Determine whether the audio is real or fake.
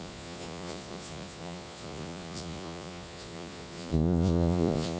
fake